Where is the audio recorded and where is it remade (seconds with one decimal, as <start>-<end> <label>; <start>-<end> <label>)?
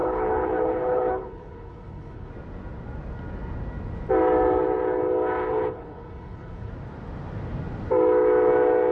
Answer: 0.0-2.3 remade; 2.3-5.5 recorded; 5.5-6.7 remade; 6.7-8.9 recorded